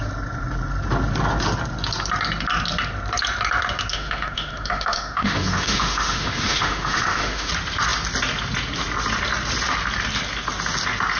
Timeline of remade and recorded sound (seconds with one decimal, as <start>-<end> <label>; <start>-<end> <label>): 0.0-3.9 recorded; 3.9-7.5 remade; 7.5-11.2 recorded